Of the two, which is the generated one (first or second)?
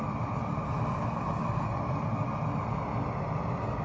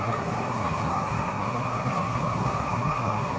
second